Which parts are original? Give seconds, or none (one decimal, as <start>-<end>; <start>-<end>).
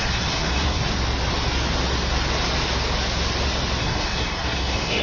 0.8-3.8